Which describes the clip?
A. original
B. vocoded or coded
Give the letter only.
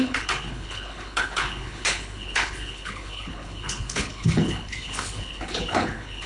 B